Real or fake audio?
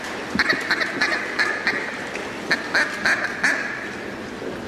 real